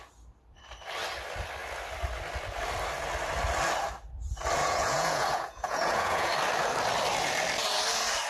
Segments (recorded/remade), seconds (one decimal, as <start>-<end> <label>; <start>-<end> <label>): 0.0-4.6 recorded; 4.6-6.3 remade; 6.3-8.3 recorded

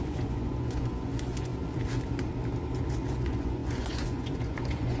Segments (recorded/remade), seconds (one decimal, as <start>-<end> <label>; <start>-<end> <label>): 0.0-1.5 remade; 1.5-3.1 recorded; 3.1-5.0 remade